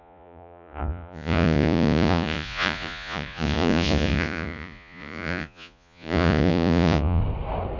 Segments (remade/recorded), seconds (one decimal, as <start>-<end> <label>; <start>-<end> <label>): 0.0-7.2 remade; 7.2-7.8 recorded